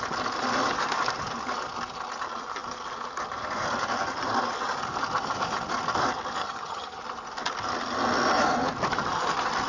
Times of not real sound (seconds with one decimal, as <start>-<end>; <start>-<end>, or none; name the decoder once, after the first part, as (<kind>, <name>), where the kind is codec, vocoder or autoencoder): 6.4-7.0 (vocoder, HiFi-GAN)